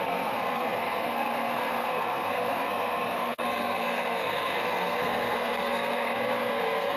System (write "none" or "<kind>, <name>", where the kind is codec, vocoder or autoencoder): codec, SNAC